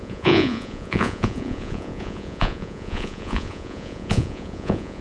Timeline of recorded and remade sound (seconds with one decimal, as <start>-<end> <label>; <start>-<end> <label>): 0.0-5.0 remade